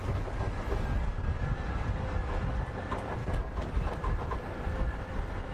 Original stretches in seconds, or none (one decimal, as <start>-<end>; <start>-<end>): 0.0-3.2; 4.3-5.5